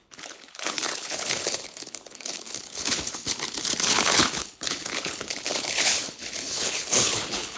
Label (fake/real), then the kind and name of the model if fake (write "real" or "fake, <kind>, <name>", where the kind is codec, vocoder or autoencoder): fake, codec, HILCodec